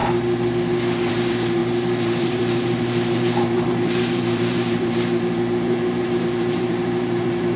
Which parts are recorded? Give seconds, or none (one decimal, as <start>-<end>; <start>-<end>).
0.0-1.1